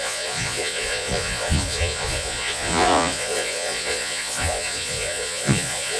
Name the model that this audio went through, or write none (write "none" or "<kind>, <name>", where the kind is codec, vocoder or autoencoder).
vocoder, Vocos